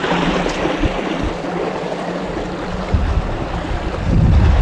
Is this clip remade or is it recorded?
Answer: recorded